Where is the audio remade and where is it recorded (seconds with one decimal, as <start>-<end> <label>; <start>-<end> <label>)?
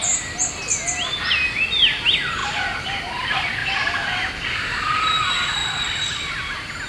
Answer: 0.0-2.4 recorded; 2.4-3.0 remade; 3.0-3.6 recorded; 3.6-4.3 remade; 4.3-5.6 recorded; 5.6-6.3 remade; 6.3-6.9 recorded